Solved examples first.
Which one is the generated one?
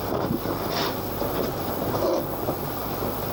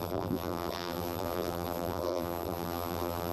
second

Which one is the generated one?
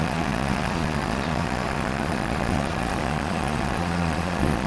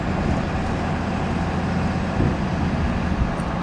first